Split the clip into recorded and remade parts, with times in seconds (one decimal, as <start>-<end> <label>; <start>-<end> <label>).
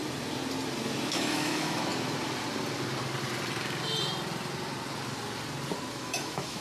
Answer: 0.0-1.1 recorded; 1.1-1.9 remade; 1.9-5.9 recorded; 5.9-6.6 remade